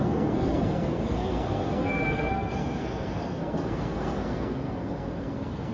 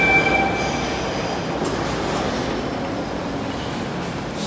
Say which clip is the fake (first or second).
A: first